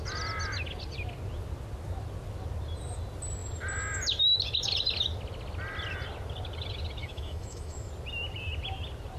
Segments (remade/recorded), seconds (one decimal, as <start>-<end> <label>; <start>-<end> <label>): 0.0-7.0 recorded; 7.0-7.9 remade; 7.9-9.2 recorded

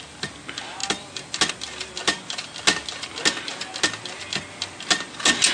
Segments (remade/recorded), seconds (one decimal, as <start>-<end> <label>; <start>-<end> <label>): 0.0-5.5 recorded

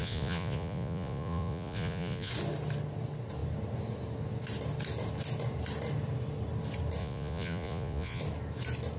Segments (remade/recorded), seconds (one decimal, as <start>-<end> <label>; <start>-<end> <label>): 0.0-2.3 remade; 2.3-7.0 recorded; 7.0-8.2 remade; 8.2-9.0 recorded

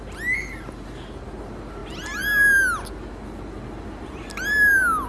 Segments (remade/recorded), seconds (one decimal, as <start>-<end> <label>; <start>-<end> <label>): 0.0-5.1 recorded

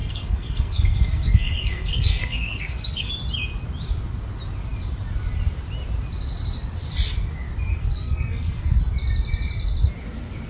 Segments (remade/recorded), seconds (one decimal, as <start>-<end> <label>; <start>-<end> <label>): 0.0-3.1 remade; 3.1-7.7 recorded; 7.7-8.8 remade; 8.8-10.5 recorded

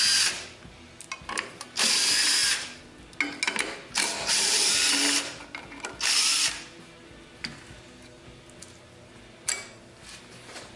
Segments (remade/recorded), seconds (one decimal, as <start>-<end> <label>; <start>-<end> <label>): 0.0-10.8 recorded

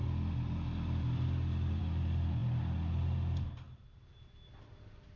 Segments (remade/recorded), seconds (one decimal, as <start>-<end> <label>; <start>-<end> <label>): 0.0-5.2 recorded

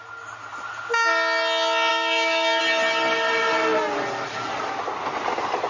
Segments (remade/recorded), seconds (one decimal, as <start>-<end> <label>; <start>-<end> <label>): 0.0-1.9 recorded; 1.9-2.6 remade; 2.6-5.7 recorded